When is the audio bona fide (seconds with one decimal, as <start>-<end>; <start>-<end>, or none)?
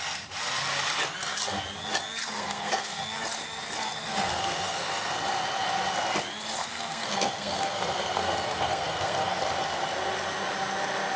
0.0-2.2; 3.0-4.0; 5.1-6.6; 9.4-11.2